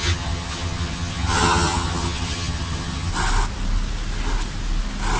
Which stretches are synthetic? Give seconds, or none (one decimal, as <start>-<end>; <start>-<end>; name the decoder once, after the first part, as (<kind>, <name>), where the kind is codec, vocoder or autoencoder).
0.0-3.1 (vocoder, HiFi-GAN)